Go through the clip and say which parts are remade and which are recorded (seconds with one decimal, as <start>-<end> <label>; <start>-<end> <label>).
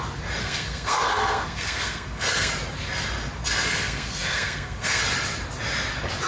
0.0-0.4 recorded; 0.4-2.5 remade; 2.5-3.4 recorded; 3.4-5.0 remade; 5.0-6.3 recorded